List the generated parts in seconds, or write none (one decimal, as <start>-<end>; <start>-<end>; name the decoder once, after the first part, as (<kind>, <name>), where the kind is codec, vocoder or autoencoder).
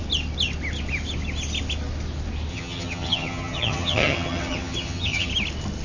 2.5-5.3 (vocoder, HiFi-GAN)